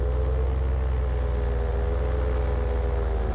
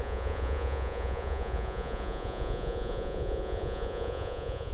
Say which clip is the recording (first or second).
first